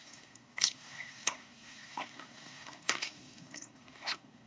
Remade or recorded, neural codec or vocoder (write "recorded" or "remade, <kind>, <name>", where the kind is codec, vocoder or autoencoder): remade, codec, SNAC